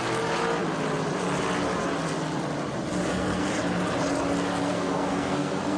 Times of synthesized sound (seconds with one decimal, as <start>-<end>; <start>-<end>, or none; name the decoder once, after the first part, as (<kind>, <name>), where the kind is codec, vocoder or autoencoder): 3.0-3.5 (codec, SNAC); 4.6-5.8